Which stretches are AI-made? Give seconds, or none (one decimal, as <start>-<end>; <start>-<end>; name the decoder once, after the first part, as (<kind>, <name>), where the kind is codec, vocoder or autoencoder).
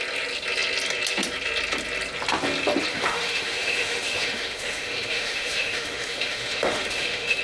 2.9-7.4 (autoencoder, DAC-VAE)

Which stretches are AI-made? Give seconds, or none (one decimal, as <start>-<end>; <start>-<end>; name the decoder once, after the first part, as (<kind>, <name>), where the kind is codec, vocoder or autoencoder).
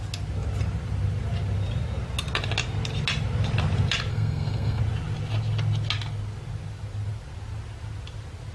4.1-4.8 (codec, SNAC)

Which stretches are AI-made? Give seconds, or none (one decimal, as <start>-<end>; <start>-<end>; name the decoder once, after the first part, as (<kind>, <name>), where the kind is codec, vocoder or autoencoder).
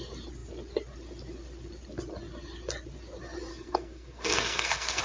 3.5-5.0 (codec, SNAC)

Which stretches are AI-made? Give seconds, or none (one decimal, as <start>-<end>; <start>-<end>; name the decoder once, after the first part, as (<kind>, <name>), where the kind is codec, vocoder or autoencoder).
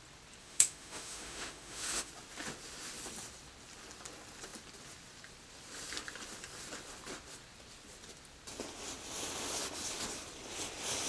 0.4-2.1 (autoencoder, DAC-VAE)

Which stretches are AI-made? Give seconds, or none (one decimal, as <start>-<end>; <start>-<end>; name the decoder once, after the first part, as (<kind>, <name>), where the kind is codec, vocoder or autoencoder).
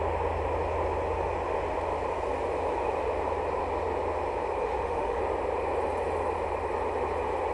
4.6-5.2 (autoencoder, DAC-VAE)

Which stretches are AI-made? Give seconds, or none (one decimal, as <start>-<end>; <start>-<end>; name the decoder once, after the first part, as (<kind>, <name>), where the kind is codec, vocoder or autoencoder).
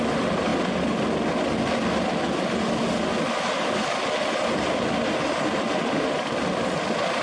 none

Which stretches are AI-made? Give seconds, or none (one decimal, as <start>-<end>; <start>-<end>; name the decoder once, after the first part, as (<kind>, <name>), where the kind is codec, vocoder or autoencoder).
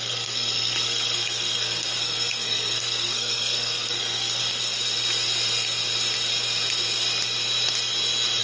0.0-4.4 (codec, SNAC)